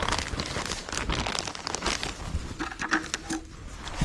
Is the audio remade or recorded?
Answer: recorded